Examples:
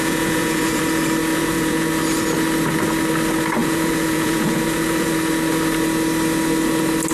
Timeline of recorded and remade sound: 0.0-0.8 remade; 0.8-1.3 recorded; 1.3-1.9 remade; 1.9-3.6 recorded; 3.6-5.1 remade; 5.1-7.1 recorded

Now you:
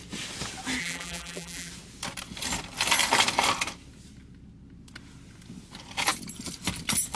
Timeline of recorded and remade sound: 0.0-0.8 recorded; 0.8-1.7 remade; 1.7-7.1 recorded

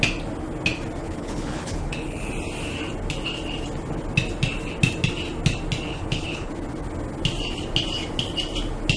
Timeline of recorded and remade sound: 0.0-1.0 recorded; 1.0-2.3 remade; 2.3-5.9 recorded; 5.9-6.5 remade; 6.5-9.0 recorded

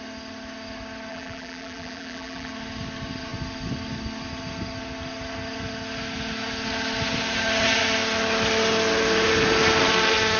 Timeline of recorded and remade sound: 0.0-1.1 recorded; 1.1-2.5 remade; 2.5-10.4 recorded

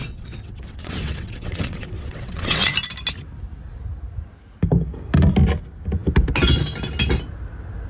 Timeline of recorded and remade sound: 0.0-2.6 remade; 2.6-7.9 recorded